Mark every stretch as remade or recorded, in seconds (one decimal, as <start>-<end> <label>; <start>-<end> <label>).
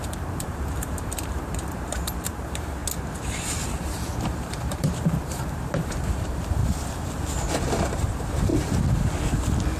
0.0-2.8 remade; 2.8-4.2 recorded; 4.2-6.6 remade; 6.6-7.6 recorded; 7.6-8.5 remade; 8.5-9.8 recorded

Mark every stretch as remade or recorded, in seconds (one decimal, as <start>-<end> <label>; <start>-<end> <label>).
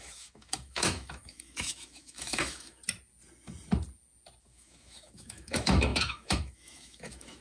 0.0-2.8 remade; 2.8-4.4 recorded; 4.4-7.4 remade